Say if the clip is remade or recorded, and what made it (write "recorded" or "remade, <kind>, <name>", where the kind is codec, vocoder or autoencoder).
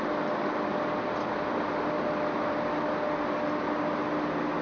recorded